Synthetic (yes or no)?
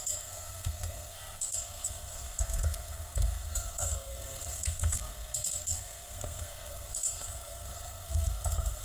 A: yes